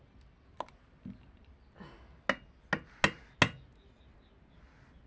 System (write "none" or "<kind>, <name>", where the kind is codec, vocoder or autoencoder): none